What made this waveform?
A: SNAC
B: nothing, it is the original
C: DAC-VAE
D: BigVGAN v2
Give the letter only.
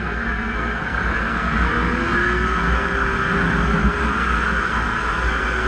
A